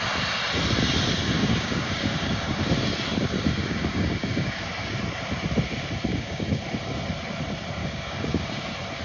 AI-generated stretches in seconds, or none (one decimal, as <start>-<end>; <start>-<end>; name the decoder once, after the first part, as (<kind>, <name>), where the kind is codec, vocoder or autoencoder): 1.4-2.7 (codec, DAC); 3.5-4.6; 6.1-6.6; 7.8-8.6